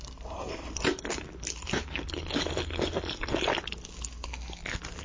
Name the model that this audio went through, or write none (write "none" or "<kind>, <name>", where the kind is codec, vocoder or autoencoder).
none